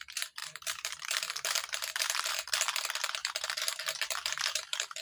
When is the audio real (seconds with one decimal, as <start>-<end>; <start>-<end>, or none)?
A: 0.0-0.4; 2.5-3.2